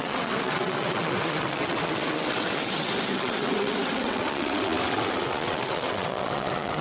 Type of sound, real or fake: fake